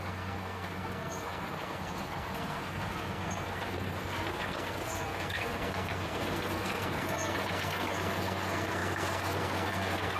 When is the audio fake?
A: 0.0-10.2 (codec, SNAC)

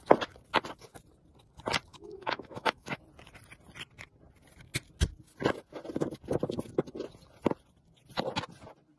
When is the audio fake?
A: 1.9-3.0 (autoencoder, DAC-VAE)

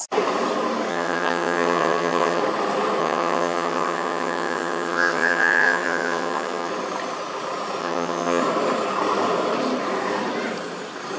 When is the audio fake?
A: 0.9-2.4 (vocoder, HiFi-GAN); 3.0-6.7; 7.8-8.4

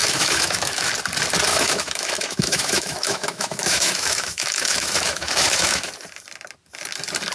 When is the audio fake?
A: 0.0-0.9 (autoencoder, DAC-VAE); 1.5-5.9

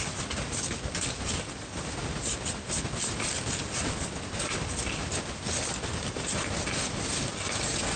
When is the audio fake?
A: none

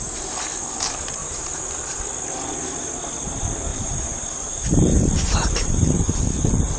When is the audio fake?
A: 1.2-2.0 (vocoder, BigVGAN v2); 3.7-6.2

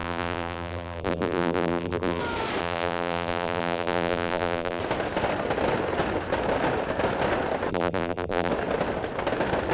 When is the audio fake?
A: 0.0-2.2 (vocoder, BigVGAN v2); 2.6-4.8; 7.7-8.5

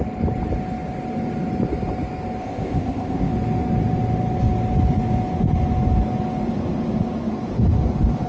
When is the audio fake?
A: 2.4-3.3 (codec, ZipCodec)